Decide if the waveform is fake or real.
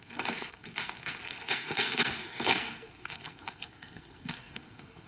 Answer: fake